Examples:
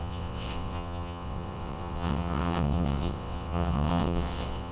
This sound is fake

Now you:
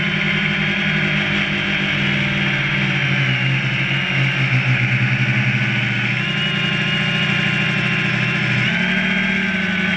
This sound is real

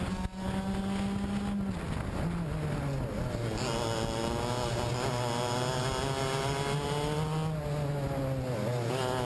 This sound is real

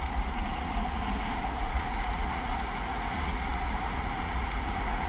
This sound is fake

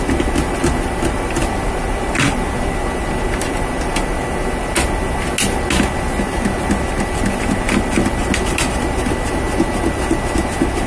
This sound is real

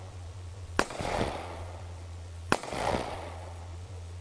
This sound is fake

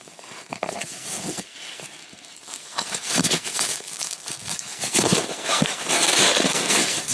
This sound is fake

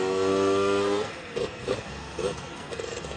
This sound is fake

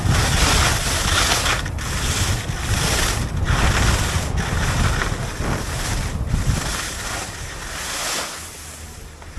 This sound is real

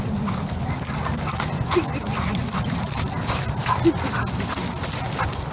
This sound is real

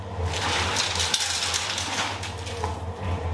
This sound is real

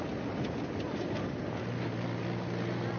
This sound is real